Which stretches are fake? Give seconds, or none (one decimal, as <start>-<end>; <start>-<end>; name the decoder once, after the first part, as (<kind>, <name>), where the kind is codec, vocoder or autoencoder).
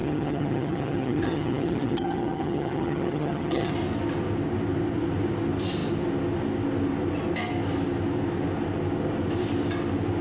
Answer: 0.0-3.7 (vocoder, HiFi-GAN)